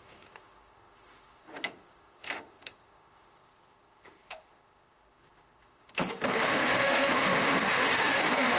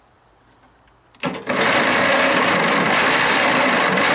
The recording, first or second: second